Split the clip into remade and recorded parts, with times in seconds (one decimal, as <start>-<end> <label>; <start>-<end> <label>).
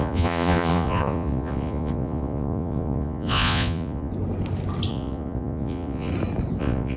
0.0-4.1 remade; 4.1-4.9 recorded; 4.9-6.1 remade; 6.1-6.6 recorded; 6.6-7.0 remade